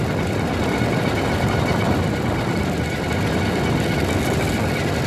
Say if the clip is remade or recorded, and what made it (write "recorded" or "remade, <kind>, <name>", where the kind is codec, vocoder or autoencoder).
recorded